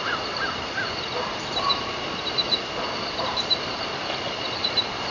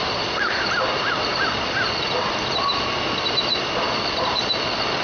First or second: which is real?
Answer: second